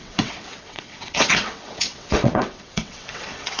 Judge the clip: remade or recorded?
remade